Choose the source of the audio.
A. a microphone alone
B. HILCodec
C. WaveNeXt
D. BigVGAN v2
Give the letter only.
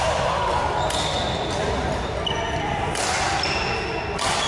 A